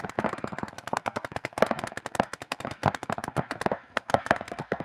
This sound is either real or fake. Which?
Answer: fake